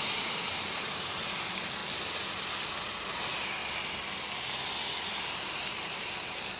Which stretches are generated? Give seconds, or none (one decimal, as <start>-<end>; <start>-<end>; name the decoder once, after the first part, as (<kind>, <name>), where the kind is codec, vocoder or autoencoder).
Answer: 0.0-1.8 (vocoder, BigVGAN v2); 2.7-3.6; 5.1-6.6